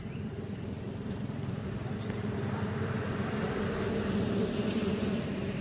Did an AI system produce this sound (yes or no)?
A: yes